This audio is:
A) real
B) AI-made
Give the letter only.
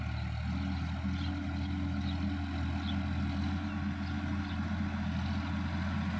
A